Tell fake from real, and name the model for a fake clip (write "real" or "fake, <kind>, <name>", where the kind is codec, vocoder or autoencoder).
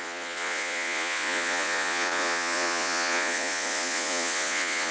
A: fake, vocoder, Vocos